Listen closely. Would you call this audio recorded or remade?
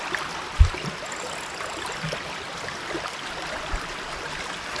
recorded